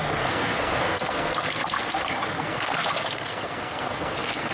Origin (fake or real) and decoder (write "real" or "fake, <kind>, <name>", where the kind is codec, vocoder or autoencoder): fake, codec, SNAC